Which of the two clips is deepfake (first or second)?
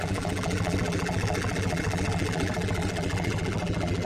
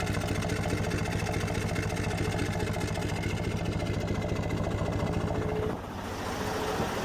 first